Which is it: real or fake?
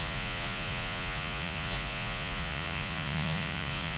fake